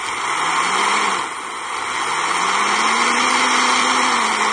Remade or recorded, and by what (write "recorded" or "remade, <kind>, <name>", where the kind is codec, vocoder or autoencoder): recorded